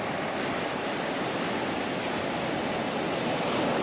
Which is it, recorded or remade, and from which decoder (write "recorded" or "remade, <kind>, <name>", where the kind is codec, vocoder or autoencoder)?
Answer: recorded